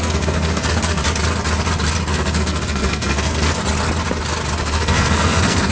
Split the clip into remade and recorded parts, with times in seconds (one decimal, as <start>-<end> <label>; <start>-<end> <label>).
0.0-1.0 remade; 1.0-2.1 recorded; 2.1-3.6 remade; 3.6-4.6 recorded; 4.6-5.7 remade